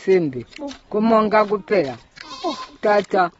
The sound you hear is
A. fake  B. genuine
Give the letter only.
B